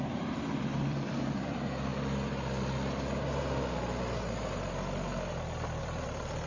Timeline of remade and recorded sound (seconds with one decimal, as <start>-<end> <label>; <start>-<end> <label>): 0.0-1.9 remade; 1.9-5.8 recorded; 5.8-6.5 remade